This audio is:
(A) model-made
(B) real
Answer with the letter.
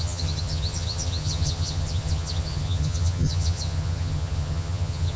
A